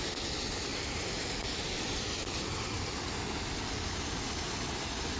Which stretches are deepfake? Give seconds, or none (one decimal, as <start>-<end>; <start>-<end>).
none